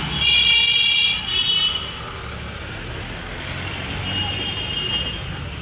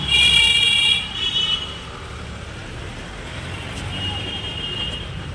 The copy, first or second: second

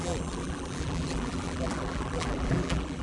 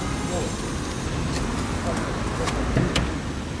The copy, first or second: first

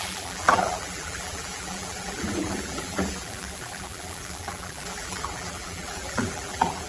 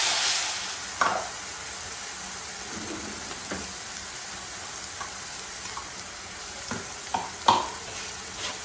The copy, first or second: first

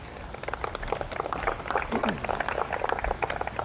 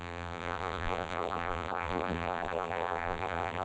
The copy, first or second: second